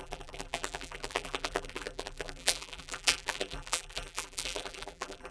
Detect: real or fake fake